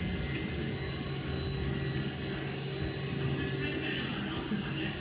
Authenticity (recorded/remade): recorded